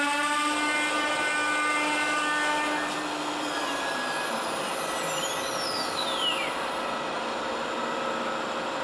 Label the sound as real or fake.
real